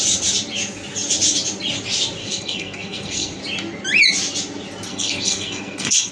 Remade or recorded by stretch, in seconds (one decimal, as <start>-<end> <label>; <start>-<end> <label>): 0.0-2.2 recorded; 2.2-3.4 remade; 3.4-4.9 recorded; 4.9-6.1 remade